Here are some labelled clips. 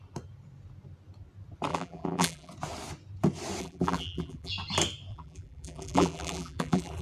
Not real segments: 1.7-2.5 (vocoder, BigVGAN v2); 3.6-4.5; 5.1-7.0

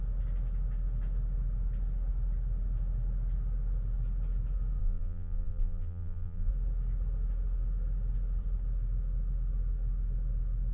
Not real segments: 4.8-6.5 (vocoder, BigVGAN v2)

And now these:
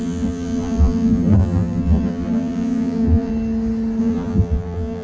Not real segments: 0.0-3.3 (vocoder, BigVGAN v2); 4.0-5.0